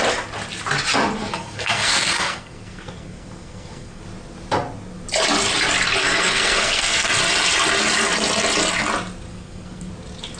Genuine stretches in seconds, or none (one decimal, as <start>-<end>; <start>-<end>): 0.0-1.2; 4.0-6.0; 7.1-9.3; 9.9-10.4

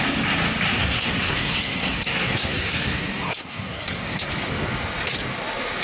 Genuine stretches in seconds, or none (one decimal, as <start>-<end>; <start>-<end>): 0.0-0.8; 4.3-5.8